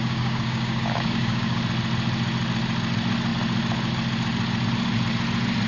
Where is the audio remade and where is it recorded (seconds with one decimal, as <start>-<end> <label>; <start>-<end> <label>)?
0.0-1.6 remade; 1.6-5.7 recorded